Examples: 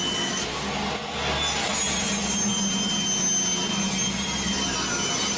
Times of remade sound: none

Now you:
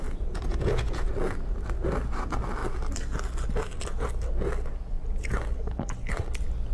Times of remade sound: 0.5-1.1 (vocoder, Vocos)

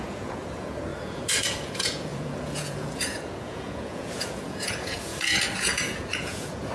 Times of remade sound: 0.0-6.7 (vocoder, Vocos)

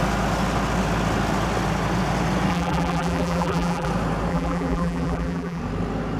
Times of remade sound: 2.5-3.9 (vocoder, BigVGAN v2); 4.3-5.6

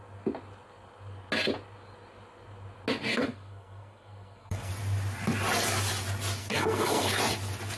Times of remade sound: 3.1-4.7 (codec, SNAC); 6.4-7.2

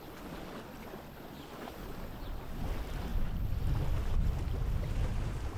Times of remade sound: none